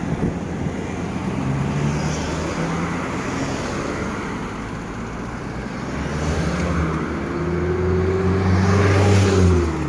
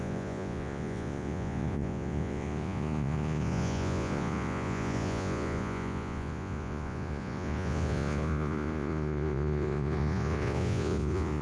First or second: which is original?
first